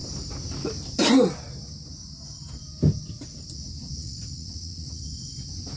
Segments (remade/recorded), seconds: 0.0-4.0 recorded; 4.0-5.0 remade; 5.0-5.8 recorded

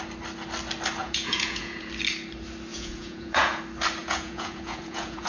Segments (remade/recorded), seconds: 0.0-1.0 recorded; 1.0-1.9 remade; 1.9-2.7 recorded; 2.7-3.6 remade; 3.6-4.0 recorded; 4.0-5.3 remade

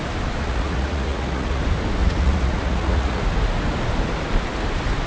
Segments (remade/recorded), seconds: 0.0-0.4 recorded; 0.4-1.6 remade; 1.6-2.0 recorded; 2.0-3.2 remade; 3.2-5.1 recorded

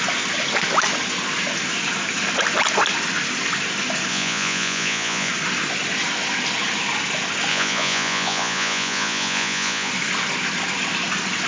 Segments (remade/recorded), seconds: 0.0-4.1 recorded; 4.1-5.3 remade; 5.3-7.5 recorded; 7.5-9.9 remade; 9.9-11.5 recorded

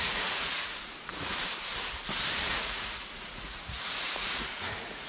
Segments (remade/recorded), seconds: 0.0-1.3 remade; 1.3-2.5 recorded; 2.5-5.1 remade

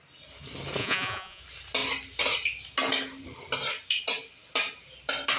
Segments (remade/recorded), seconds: 0.0-0.8 recorded; 0.8-1.4 remade; 1.4-5.4 recorded

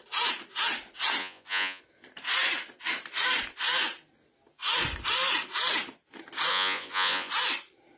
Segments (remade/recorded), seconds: 0.0-1.2 recorded; 1.2-1.8 remade; 1.8-6.5 recorded; 6.5-7.3 remade; 7.3-8.0 recorded

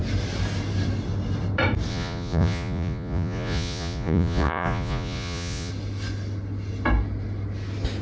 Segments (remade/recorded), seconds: 0.0-1.9 recorded; 1.9-5.7 remade; 5.7-8.0 recorded